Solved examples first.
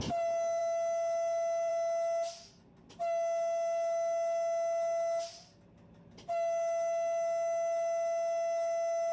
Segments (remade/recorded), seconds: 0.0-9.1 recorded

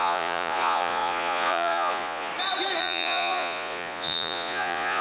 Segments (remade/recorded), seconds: 0.0-2.3 remade; 2.3-2.8 recorded; 2.8-5.0 remade